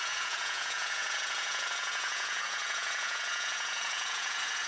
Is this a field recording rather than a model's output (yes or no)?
no